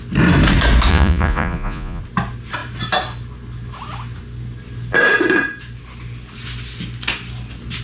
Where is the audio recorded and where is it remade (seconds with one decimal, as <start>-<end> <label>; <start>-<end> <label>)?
0.0-0.9 recorded; 0.9-2.0 remade; 2.0-7.8 recorded